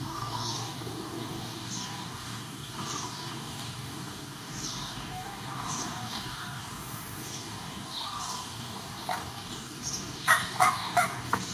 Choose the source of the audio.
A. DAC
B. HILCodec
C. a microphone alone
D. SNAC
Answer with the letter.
A